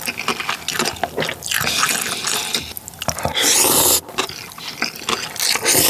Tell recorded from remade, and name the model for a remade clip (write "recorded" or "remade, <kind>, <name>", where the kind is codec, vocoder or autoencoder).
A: recorded